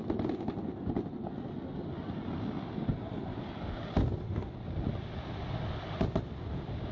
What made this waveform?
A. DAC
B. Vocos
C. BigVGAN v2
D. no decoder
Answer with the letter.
D